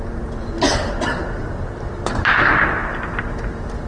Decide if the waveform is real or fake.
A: real